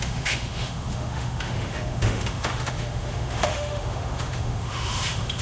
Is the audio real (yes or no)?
no